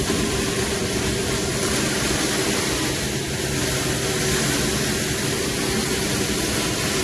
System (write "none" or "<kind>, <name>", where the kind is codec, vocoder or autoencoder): none